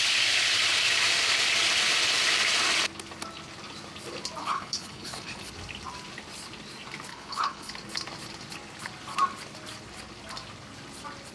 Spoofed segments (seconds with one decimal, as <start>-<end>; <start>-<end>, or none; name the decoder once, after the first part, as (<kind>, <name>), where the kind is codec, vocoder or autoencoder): 4.4-5.5 (codec, HILCodec); 7.1-7.7